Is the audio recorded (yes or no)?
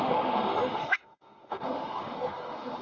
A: no